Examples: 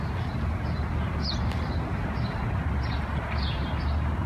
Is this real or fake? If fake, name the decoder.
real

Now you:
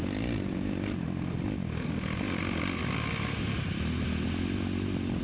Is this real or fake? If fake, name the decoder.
real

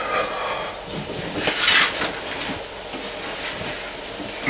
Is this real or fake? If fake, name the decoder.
real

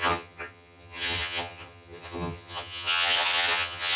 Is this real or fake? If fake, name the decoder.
fake, vocoder, HiFi-GAN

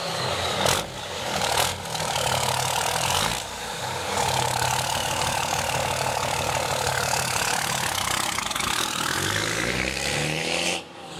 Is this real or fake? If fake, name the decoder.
fake, codec, DAC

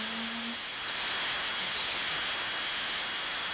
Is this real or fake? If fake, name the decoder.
real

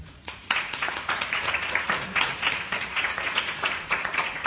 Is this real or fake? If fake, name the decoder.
fake, vocoder, Vocos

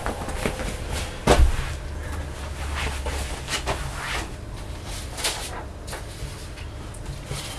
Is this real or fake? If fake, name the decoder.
real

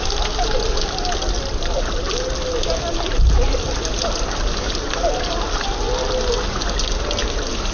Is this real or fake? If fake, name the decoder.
real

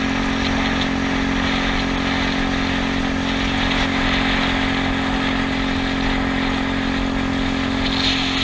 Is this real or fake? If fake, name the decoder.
real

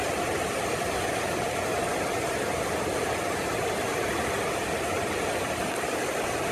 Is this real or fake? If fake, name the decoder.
real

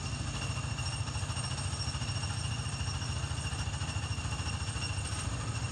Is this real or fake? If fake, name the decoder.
real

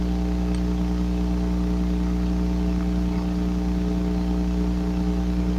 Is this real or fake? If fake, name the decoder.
real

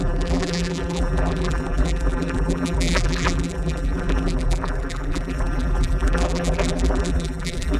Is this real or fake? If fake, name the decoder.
fake, vocoder, BigVGAN v2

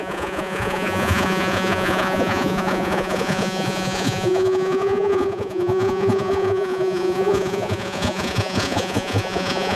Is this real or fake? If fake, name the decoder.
fake, vocoder, Vocos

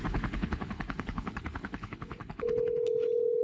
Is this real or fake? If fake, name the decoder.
fake, codec, HILCodec